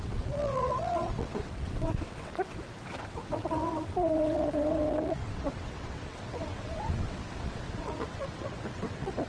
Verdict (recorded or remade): remade